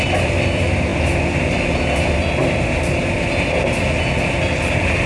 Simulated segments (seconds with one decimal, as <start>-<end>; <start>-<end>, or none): none